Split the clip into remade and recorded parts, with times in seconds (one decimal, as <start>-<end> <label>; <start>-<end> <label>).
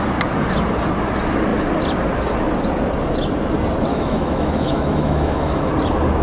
0.0-3.9 recorded; 3.9-5.7 remade; 5.7-6.2 recorded